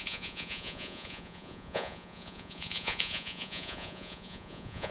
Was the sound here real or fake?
fake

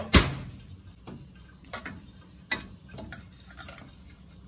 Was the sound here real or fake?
real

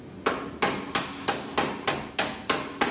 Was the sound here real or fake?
real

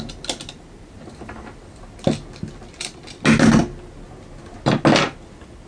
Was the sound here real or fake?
real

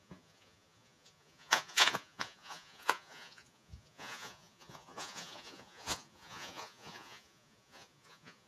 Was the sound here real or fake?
fake